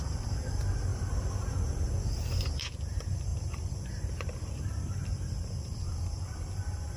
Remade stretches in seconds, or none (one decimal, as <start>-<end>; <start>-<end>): 0.0-0.9; 2.1-7.0